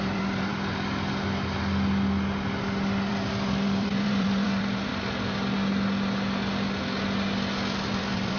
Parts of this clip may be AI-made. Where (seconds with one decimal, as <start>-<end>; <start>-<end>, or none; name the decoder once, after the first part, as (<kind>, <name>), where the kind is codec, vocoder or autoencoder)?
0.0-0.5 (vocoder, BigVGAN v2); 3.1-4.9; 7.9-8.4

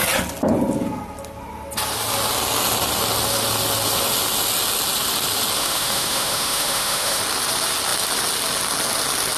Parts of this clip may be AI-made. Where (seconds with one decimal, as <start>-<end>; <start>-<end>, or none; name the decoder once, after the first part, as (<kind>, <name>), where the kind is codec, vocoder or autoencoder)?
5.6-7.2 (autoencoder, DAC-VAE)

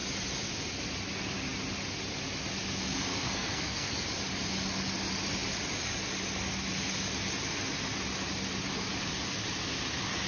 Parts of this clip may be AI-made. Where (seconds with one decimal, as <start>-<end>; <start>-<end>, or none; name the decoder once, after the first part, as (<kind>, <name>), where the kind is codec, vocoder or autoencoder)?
3.1-3.9 (codec, SNAC)

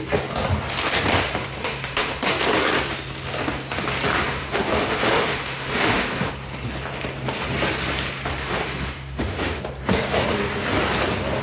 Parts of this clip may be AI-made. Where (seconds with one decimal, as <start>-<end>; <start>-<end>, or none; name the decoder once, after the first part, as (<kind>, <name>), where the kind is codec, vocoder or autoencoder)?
1.6-2.3 (autoencoder, DAC-VAE); 4.1-6.3; 8.4-9.6

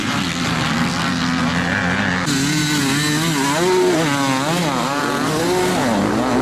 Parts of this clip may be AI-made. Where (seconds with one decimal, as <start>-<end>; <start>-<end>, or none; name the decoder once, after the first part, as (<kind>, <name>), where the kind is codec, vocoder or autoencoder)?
0.0-0.9 (vocoder, BigVGAN v2)

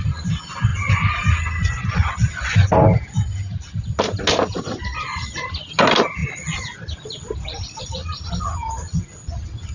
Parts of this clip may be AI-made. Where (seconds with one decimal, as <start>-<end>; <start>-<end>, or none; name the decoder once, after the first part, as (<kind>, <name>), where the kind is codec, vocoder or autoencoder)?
none

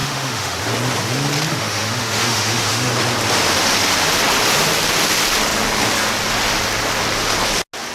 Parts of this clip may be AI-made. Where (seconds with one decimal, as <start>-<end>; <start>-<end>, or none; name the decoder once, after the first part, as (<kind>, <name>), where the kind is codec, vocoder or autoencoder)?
0.0-0.6 (autoencoder, DAC-VAE); 1.5-2.9